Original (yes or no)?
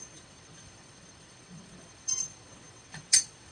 no